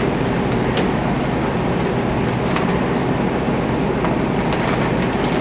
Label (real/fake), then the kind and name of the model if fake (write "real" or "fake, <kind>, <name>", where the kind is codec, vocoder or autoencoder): real